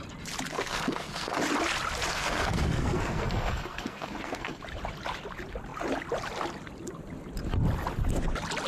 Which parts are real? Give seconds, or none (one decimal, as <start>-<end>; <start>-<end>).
0.0-0.5; 1.4-2.1; 4.6-8.7